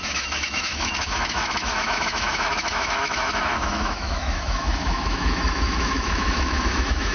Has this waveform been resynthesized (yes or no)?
yes